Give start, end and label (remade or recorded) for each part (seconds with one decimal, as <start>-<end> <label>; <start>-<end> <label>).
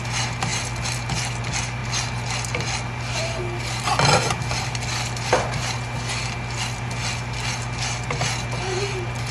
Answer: 0.0-9.3 recorded